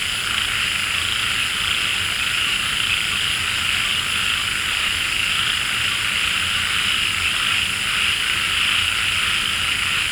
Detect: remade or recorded recorded